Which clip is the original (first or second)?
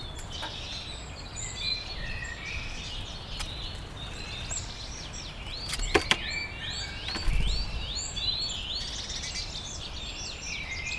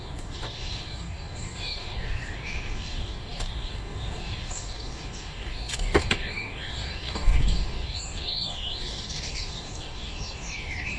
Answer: first